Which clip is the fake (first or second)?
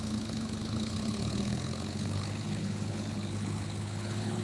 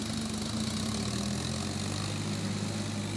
first